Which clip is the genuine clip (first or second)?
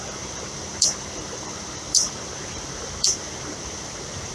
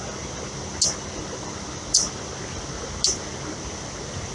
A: second